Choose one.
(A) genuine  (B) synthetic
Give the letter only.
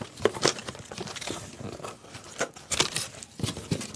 A